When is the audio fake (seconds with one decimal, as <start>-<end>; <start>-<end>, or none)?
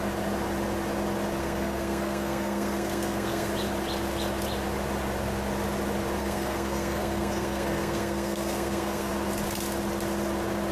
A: 1.4-3.5; 6.2-9.1